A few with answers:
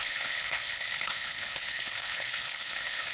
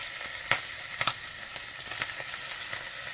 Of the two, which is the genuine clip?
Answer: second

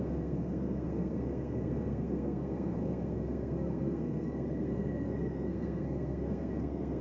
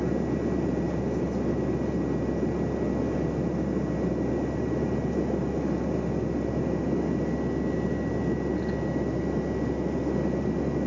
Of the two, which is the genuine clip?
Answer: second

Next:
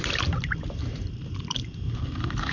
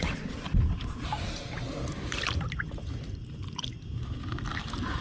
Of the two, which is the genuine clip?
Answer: second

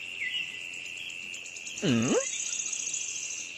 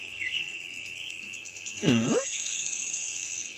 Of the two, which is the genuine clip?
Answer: first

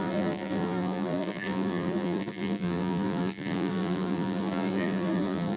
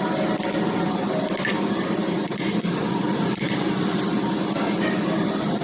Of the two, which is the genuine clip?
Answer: second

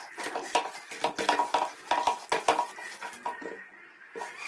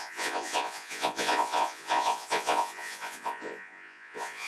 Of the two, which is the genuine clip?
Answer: first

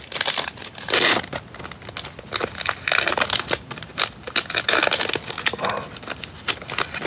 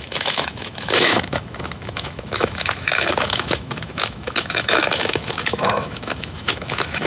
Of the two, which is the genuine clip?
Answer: first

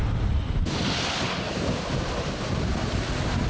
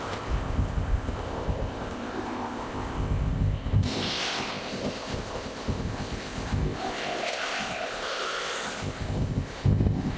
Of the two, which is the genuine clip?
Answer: first